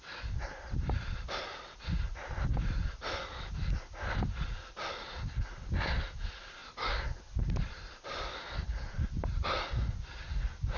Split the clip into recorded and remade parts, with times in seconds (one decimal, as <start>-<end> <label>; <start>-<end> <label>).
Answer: 0.0-10.8 recorded